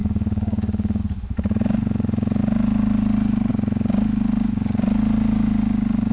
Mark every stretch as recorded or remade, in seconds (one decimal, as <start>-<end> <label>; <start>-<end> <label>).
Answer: 0.0-1.0 remade; 1.0-6.1 recorded